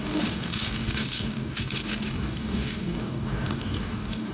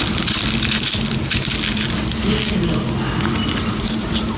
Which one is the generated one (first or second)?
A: first